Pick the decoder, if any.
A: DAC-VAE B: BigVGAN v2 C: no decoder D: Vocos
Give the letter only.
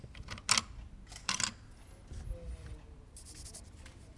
C